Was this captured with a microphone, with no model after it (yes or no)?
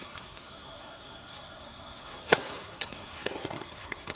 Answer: no